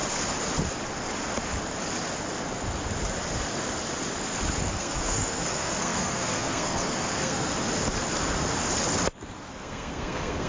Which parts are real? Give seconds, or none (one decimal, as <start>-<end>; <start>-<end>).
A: 0.0-4.7; 7.5-9.5